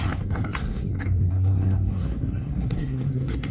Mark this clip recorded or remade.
remade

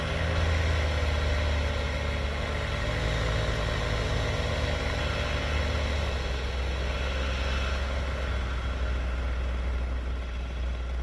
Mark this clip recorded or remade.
recorded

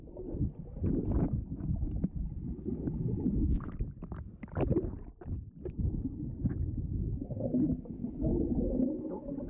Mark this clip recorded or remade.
recorded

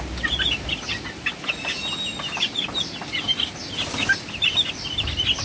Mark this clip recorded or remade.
recorded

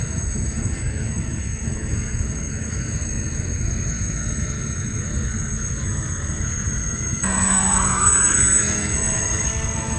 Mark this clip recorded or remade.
remade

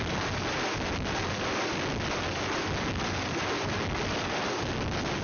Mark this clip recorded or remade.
recorded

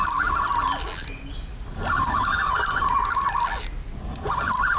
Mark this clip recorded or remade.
recorded